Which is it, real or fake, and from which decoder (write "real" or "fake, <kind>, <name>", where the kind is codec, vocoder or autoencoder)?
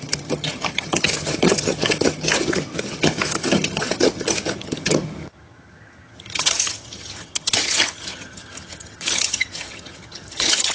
fake, vocoder, HiFi-GAN